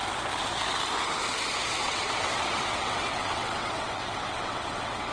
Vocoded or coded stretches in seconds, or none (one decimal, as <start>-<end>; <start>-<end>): 1.8-5.1